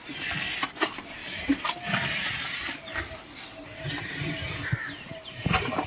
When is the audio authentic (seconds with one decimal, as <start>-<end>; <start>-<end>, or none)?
0.0-5.9